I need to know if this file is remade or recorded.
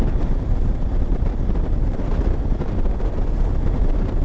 remade